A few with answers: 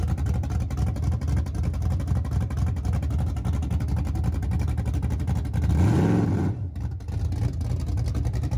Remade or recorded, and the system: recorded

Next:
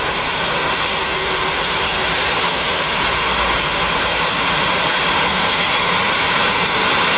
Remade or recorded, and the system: recorded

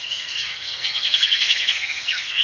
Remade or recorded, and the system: remade, codec, SNAC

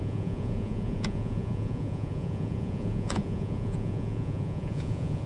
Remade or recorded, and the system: remade, vocoder, Vocos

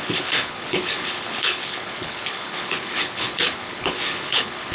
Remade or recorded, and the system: remade, codec, HILCodec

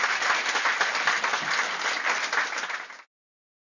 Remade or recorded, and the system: recorded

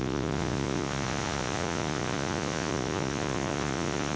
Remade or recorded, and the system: remade, vocoder, Vocos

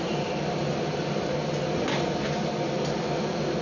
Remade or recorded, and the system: recorded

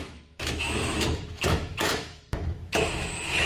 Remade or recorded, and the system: remade, autoencoder, DAC-VAE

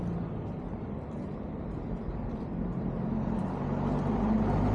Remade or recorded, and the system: recorded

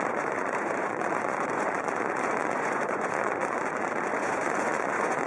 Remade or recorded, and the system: remade, vocoder, Vocos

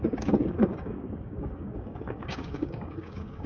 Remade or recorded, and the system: remade, codec, DAC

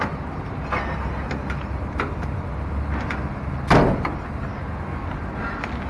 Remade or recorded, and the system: recorded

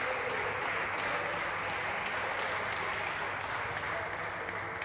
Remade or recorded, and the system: recorded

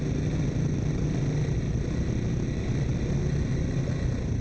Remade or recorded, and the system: recorded